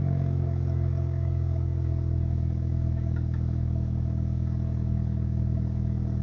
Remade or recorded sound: remade